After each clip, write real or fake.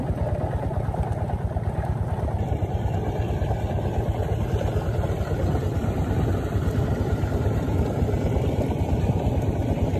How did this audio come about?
real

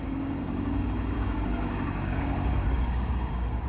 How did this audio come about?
fake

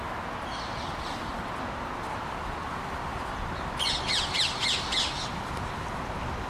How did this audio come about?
real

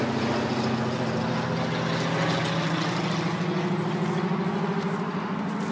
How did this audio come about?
real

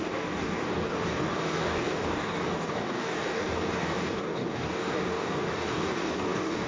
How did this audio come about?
fake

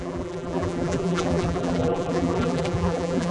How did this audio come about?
fake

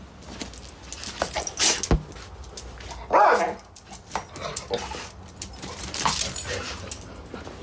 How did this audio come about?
real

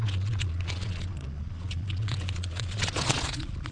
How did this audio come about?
fake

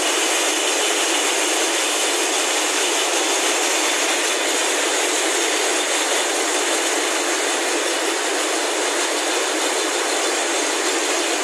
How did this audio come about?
real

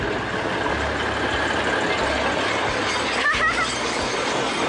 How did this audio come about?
real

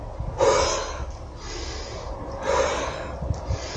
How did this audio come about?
real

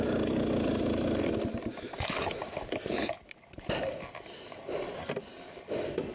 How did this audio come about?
real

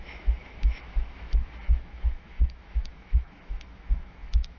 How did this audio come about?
fake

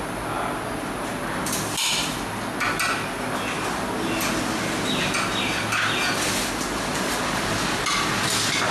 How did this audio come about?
real